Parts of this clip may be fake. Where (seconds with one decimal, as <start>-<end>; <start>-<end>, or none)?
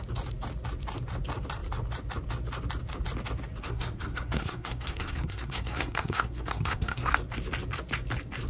3.6-7.1